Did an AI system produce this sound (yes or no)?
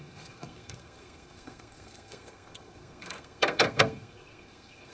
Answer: yes